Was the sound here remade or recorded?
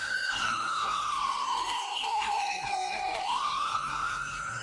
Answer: remade